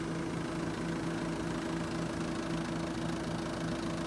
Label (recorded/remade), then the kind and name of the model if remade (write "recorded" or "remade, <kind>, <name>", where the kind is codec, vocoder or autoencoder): recorded